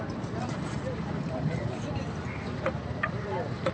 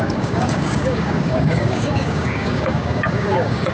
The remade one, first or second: second